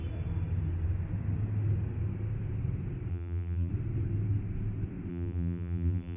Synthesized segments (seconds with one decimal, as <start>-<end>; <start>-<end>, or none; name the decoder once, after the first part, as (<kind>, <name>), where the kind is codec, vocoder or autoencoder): 3.1-3.7 (vocoder, BigVGAN v2); 5.1-6.2